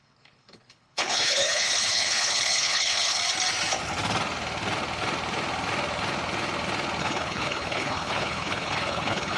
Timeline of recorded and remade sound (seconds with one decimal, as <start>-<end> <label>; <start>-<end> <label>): 0.0-3.2 remade; 3.2-7.0 recorded; 7.0-9.4 remade